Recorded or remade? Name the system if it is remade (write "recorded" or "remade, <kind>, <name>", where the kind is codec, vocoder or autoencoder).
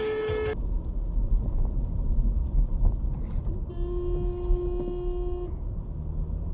recorded